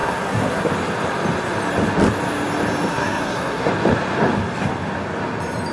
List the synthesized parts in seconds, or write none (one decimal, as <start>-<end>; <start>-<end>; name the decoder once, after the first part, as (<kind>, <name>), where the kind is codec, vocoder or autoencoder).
0.0-0.7 (codec, SNAC); 2.9-3.7